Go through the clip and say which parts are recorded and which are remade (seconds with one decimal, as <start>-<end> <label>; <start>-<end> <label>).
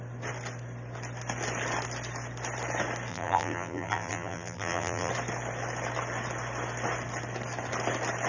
0.0-3.1 recorded; 3.1-5.1 remade; 5.1-8.3 recorded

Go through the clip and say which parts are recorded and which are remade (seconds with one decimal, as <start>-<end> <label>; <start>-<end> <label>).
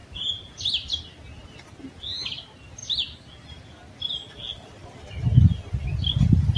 0.0-6.6 recorded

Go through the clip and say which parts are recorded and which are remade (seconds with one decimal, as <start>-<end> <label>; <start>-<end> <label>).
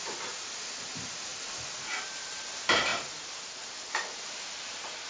0.0-1.3 remade; 1.3-2.2 recorded; 2.2-5.1 remade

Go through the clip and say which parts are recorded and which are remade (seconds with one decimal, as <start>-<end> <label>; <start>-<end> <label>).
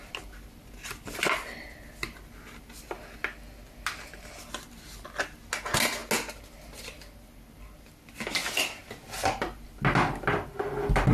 0.0-11.1 recorded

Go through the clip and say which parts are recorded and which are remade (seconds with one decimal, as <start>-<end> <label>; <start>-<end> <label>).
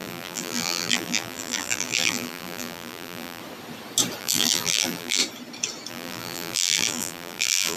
0.0-3.4 remade; 3.4-4.2 recorded; 4.2-5.2 remade; 5.2-5.9 recorded; 5.9-7.8 remade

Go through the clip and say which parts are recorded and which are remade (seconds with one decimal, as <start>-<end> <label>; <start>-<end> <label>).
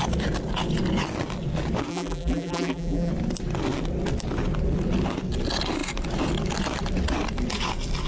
0.0-1.9 recorded; 1.9-3.1 remade; 3.1-8.1 recorded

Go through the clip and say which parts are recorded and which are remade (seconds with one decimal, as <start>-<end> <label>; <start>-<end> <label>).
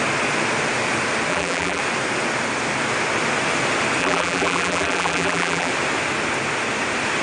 0.0-1.3 recorded; 1.3-1.8 remade; 1.8-4.0 recorded; 4.0-5.7 remade; 5.7-7.2 recorded